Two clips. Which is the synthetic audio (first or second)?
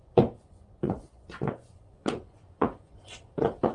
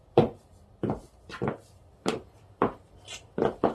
first